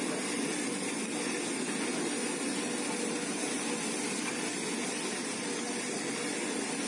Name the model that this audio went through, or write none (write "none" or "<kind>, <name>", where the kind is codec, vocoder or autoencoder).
none